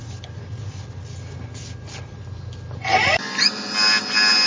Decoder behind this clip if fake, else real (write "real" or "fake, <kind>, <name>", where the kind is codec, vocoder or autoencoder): real